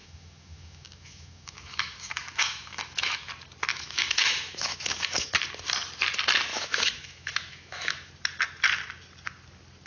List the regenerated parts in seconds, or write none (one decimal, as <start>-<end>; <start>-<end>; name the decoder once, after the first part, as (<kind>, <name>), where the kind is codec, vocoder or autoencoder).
0.0-3.3 (autoencoder, DAC-VAE); 3.7-5.3; 6.5-8.1